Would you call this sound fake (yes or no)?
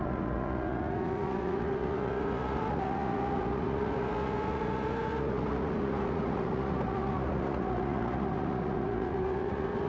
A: yes